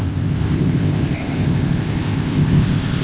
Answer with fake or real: fake